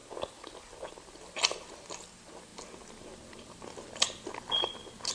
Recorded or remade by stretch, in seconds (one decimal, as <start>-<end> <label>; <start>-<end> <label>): 0.0-5.1 recorded